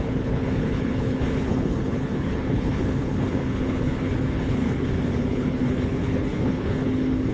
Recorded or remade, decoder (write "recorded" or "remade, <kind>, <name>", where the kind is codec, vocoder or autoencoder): remade, codec, HILCodec